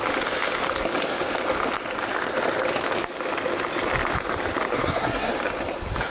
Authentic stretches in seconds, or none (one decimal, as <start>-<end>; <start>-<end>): 0.0-4.7; 5.3-6.1

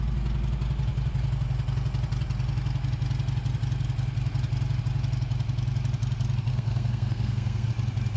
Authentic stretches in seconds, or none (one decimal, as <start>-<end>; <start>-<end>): 0.0-6.5; 7.7-8.2

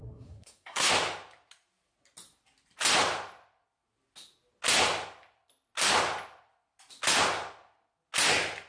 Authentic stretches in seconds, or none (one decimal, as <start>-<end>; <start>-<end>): 0.9-8.7

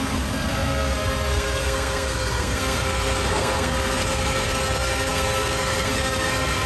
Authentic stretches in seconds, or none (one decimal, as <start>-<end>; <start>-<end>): none

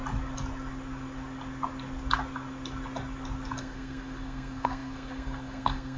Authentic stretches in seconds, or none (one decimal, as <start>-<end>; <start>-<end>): 0.0-3.6

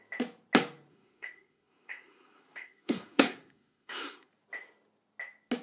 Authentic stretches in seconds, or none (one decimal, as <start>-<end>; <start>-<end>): 0.0-0.9; 4.3-5.6

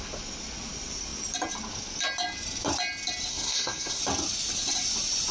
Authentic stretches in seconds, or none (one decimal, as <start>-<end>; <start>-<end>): 0.0-3.3; 4.0-5.3